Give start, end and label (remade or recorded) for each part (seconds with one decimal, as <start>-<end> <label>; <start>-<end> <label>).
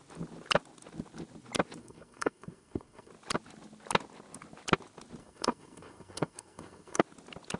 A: 0.0-1.8 recorded; 1.8-3.1 remade; 3.1-5.2 recorded; 5.2-7.0 remade; 7.0-7.6 recorded